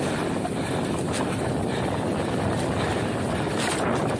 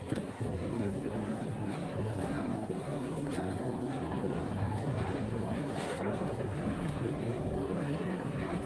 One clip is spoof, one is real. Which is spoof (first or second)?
second